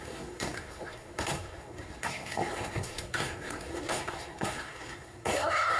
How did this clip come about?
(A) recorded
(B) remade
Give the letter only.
B